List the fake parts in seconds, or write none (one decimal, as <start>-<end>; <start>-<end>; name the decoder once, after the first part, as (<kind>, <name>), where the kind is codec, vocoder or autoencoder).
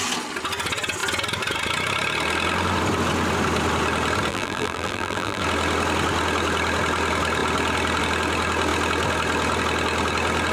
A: 4.3-5.4 (vocoder, BigVGAN v2)